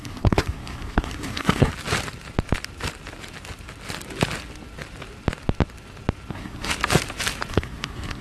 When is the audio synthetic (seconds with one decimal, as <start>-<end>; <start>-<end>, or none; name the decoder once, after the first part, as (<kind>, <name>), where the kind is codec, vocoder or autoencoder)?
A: 0.0-1.7 (codec, SNAC); 6.3-6.7; 7.5-8.2